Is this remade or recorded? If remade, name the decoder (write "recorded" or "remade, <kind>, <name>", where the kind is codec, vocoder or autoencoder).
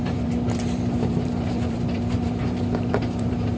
remade, vocoder, BigVGAN v2